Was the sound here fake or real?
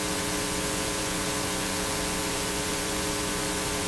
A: fake